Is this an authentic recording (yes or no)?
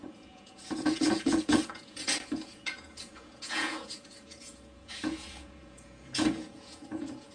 no